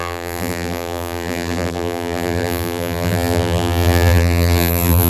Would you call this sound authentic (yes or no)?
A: no